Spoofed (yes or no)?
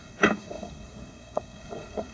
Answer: yes